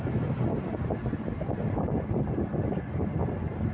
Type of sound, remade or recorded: recorded